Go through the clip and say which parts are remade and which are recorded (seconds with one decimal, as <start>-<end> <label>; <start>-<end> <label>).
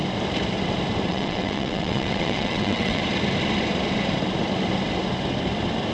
0.0-1.1 recorded; 1.1-3.0 remade; 3.0-5.9 recorded